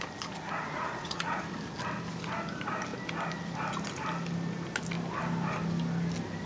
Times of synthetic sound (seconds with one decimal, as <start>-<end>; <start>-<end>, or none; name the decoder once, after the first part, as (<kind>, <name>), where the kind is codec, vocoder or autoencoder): 0.6-1.4 (vocoder, Vocos)